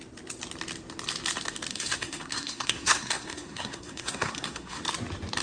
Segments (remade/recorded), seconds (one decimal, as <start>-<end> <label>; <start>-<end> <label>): 0.0-1.7 recorded; 1.7-4.8 remade; 4.8-5.4 recorded